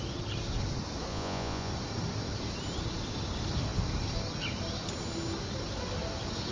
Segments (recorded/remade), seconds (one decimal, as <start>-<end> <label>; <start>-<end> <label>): 0.0-1.1 recorded; 1.1-1.7 remade; 1.7-6.5 recorded